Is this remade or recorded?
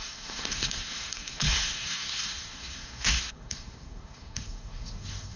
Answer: remade